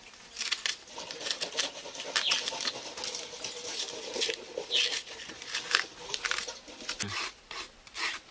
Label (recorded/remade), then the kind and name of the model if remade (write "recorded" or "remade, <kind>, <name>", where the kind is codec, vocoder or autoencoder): recorded